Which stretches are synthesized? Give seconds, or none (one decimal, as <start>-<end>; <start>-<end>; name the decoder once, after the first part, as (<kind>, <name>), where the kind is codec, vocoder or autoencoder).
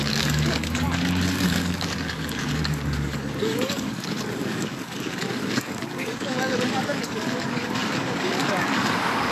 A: 0.0-9.3 (codec, DAC)